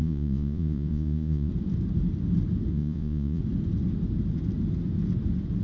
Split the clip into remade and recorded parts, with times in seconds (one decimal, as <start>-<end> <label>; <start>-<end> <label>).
0.0-1.5 remade; 1.5-2.7 recorded; 2.7-3.4 remade; 3.4-5.6 recorded